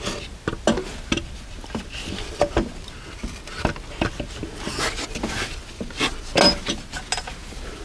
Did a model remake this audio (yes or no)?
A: no